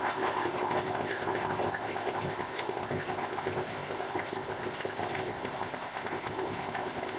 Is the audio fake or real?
fake